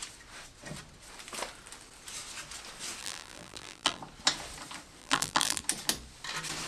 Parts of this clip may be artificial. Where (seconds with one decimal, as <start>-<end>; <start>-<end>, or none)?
3.0-4.0; 5.0-5.6